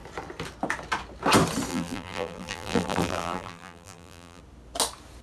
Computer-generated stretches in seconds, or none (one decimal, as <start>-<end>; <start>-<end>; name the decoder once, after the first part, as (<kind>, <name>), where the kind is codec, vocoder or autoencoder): 1.7-4.4 (vocoder, BigVGAN v2)